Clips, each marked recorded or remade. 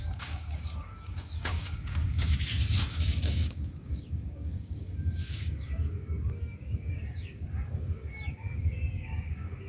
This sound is remade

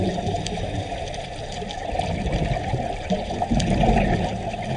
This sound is recorded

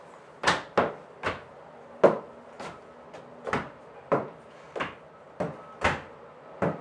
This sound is recorded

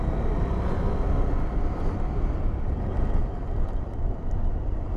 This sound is recorded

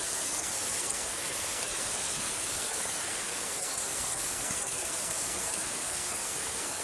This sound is remade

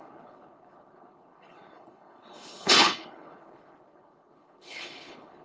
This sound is remade